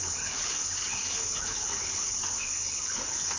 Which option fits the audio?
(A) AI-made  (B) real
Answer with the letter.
A